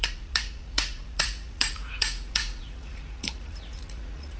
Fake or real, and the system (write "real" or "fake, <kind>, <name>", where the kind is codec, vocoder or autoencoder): fake, vocoder, Vocos